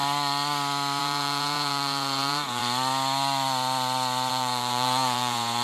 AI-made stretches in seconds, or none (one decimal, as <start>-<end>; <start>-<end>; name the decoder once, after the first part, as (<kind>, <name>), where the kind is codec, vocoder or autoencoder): 1.0-2.6 (vocoder, Vocos); 4.3-5.6

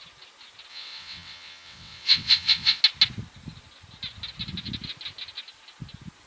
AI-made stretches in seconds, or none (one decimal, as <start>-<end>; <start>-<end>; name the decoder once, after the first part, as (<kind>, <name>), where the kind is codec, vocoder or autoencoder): 0.7-2.8 (vocoder, WaveNeXt)

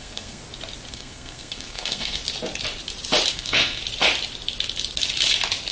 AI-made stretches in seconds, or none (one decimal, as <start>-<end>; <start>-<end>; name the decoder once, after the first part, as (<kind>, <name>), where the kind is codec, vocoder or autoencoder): 0.0-0.4 (codec, SNAC); 0.9-2.2; 3.3-3.8

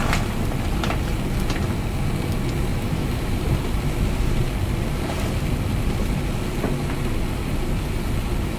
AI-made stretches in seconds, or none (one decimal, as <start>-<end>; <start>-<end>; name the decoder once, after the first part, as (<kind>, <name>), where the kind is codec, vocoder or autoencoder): 2.7-4.7 (vocoder, BigVGAN v2)

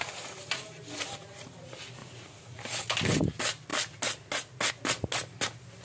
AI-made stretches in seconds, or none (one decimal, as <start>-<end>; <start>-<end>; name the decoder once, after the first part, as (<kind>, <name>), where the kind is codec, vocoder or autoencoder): 2.0-2.6 (vocoder, Vocos)